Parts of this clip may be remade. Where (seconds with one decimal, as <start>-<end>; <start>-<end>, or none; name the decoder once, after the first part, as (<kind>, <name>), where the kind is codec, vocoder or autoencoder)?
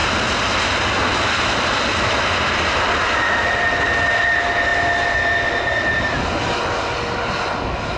none